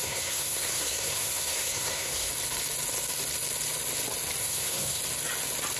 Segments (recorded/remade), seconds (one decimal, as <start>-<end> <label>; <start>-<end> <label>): 0.0-2.3 remade; 2.3-4.4 recorded; 4.4-5.0 remade; 5.0-5.8 recorded